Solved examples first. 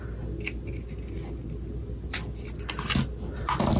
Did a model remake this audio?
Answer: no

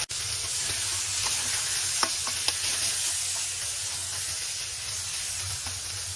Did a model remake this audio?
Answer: no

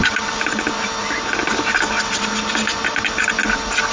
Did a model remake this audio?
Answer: no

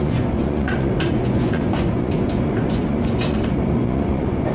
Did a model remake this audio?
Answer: yes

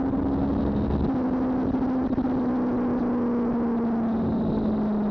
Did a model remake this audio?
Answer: no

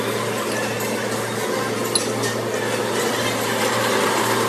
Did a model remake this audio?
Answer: no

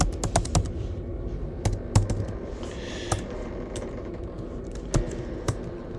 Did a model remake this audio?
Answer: no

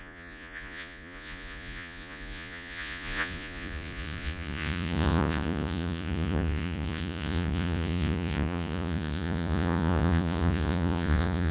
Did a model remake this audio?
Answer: yes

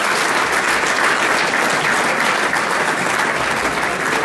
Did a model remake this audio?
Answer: no